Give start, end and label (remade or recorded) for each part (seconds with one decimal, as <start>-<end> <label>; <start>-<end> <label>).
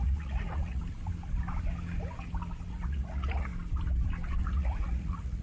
0.0-0.8 remade; 0.8-2.7 recorded; 2.7-3.5 remade; 3.5-4.4 recorded; 4.4-5.4 remade